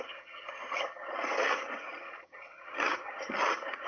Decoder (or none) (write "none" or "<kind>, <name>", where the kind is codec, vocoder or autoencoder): vocoder, HiFi-GAN